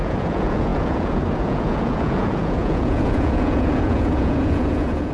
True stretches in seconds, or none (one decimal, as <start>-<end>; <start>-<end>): none